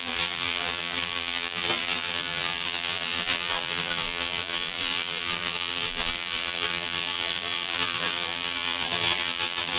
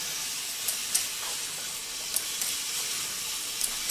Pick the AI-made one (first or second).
first